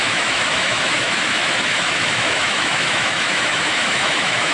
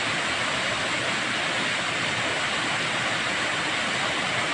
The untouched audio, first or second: second